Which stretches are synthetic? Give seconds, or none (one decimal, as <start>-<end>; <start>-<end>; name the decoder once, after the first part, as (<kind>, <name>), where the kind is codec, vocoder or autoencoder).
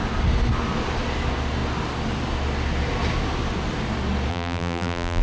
4.3-5.2 (vocoder, BigVGAN v2)